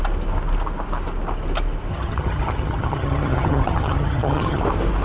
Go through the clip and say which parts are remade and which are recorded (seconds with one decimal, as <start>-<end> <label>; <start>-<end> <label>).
0.0-1.9 recorded; 1.9-4.6 remade; 4.6-5.0 recorded